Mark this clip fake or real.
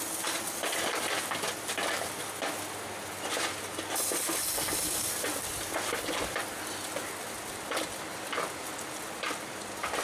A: real